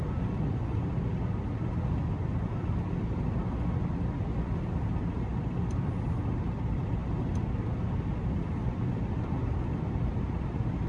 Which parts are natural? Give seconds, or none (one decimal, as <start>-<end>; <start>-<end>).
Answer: 0.0-10.9